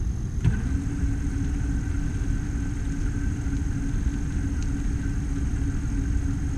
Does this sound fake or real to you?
real